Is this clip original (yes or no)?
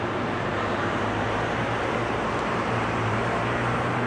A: no